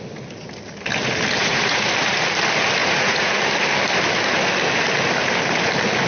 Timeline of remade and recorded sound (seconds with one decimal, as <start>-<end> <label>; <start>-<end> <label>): 0.0-1.4 recorded; 1.4-1.9 remade; 1.9-2.8 recorded; 2.8-3.4 remade; 3.4-6.1 recorded